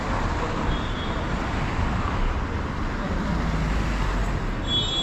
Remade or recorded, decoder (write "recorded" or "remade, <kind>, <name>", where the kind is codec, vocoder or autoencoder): recorded